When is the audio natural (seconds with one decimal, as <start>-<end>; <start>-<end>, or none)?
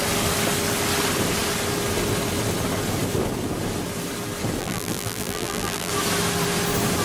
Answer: 0.0-4.6; 5.9-7.0